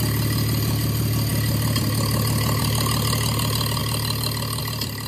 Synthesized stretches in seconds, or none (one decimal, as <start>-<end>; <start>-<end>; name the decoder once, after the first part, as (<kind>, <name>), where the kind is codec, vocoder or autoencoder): none